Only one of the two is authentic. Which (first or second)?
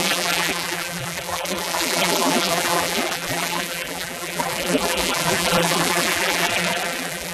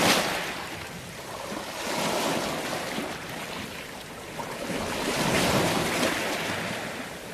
second